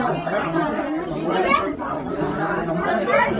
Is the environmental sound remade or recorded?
remade